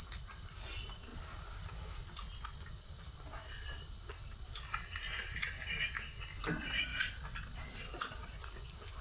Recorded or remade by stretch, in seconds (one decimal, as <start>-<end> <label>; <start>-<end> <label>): 0.0-9.0 recorded